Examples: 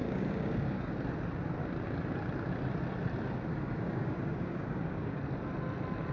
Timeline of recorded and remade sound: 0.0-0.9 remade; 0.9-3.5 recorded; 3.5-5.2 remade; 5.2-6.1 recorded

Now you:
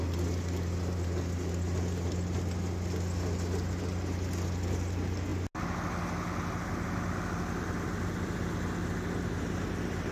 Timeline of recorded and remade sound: 0.0-10.1 recorded

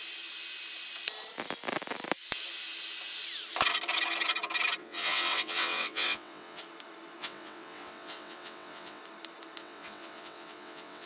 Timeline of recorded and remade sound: 0.0-4.8 recorded; 4.8-6.6 remade; 6.6-7.2 recorded; 7.2-9.0 remade; 9.0-9.6 recorded; 9.6-11.1 remade

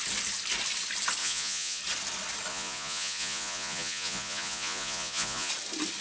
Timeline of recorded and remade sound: 0.0-1.2 recorded; 1.2-1.8 remade; 1.8-2.5 recorded; 2.5-5.5 remade; 5.5-6.0 recorded

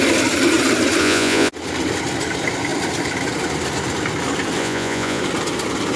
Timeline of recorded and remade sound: 0.0-1.0 recorded; 1.0-1.5 remade; 1.5-4.6 recorded; 4.6-5.2 remade; 5.2-6.0 recorded